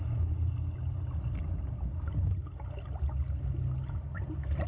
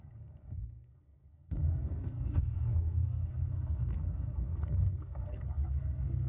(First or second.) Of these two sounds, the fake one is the second